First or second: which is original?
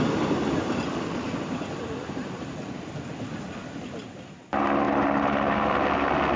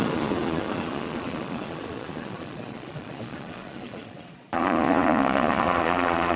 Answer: first